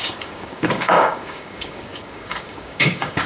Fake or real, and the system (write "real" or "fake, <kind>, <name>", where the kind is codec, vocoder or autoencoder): fake, codec, DAC